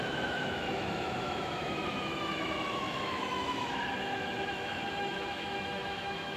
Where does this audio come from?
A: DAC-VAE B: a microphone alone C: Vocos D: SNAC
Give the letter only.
A